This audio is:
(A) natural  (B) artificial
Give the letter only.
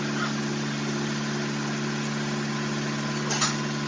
A